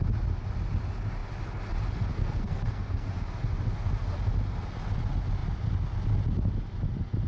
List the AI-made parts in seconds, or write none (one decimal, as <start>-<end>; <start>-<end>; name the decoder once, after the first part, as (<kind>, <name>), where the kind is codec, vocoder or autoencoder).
2.1-3.1 (codec, SNAC)